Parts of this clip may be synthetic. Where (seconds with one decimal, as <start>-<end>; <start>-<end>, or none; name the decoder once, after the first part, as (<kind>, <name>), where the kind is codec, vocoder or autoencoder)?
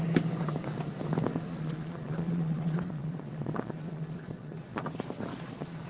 1.3-4.8 (vocoder, Vocos); 5.3-5.9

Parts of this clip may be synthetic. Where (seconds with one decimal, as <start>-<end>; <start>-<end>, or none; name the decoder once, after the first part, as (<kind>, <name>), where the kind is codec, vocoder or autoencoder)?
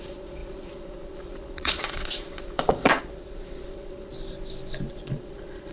0.0-4.1 (vocoder, Vocos); 4.9-5.7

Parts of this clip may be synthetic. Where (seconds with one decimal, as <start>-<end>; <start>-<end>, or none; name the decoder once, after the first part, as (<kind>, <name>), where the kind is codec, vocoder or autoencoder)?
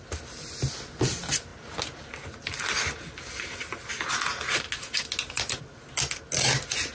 none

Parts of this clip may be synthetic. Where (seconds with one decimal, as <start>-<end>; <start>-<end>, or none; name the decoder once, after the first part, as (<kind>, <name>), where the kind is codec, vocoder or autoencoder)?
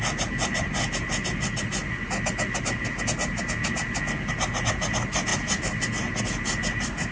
none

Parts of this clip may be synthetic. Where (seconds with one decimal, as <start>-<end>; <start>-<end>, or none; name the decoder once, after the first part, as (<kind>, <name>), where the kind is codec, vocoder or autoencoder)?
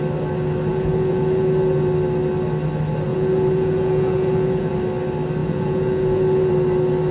0.7-1.8 (vocoder, Vocos); 3.1-4.7; 5.4-6.5